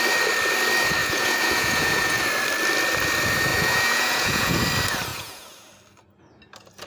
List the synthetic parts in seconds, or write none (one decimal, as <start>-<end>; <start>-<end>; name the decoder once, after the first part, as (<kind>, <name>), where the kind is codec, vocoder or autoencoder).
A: 1.0-2.2 (vocoder, Vocos); 3.5-4.6; 5.1-5.7